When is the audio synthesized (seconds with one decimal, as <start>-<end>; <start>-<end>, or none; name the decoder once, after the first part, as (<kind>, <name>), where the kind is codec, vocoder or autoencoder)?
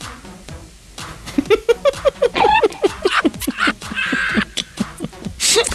0.0-0.6 (vocoder, Vocos); 2.1-5.7